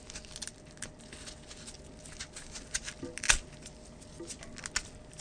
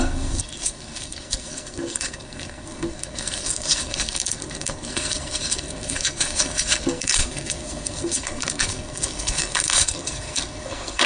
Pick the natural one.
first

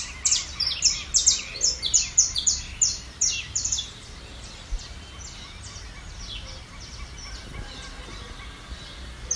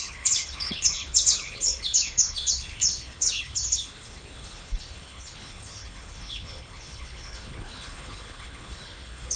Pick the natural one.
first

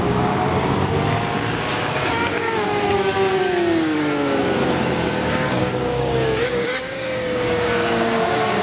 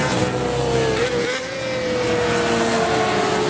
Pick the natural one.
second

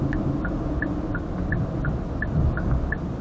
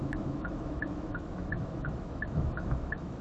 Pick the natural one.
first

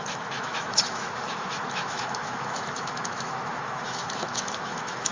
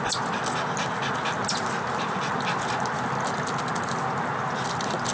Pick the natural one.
second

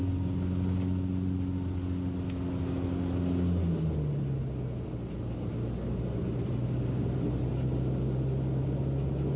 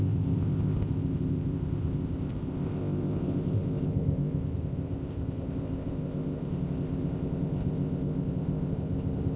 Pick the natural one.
first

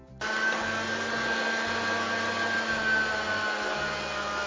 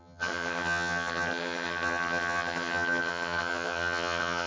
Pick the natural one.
first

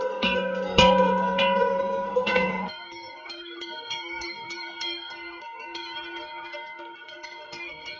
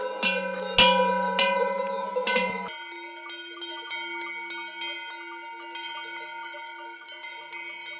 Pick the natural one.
second